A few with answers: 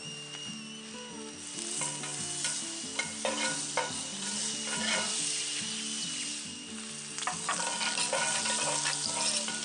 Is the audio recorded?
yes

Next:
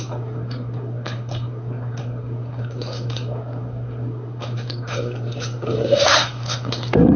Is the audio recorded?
no